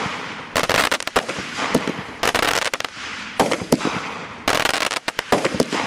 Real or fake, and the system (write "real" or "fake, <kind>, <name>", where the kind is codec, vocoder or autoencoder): fake, vocoder, BigVGAN v2